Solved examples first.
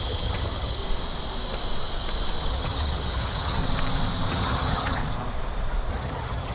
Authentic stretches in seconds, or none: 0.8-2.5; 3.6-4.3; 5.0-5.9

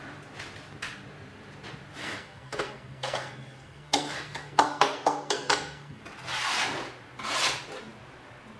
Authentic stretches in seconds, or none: 0.0-2.0; 6.0-8.6

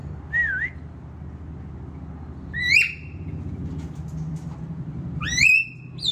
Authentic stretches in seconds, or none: 0.0-6.1

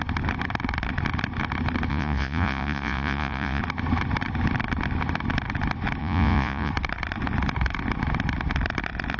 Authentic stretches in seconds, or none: 0.0-1.9; 3.6-6.0; 6.7-9.2

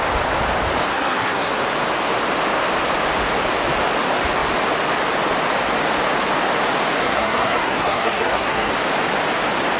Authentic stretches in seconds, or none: 0.0-0.9; 1.5-7.0; 8.7-9.8

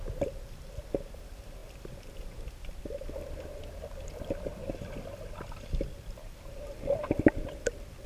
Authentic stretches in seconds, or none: 0.0-8.1

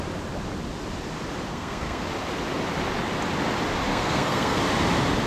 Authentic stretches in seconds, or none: 0.0-1.5; 2.0-3.9; 4.6-5.3

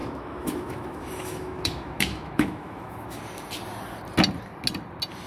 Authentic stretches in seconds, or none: 3.2-5.3